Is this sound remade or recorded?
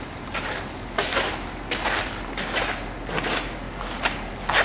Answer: recorded